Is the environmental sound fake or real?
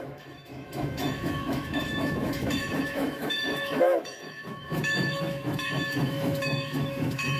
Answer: fake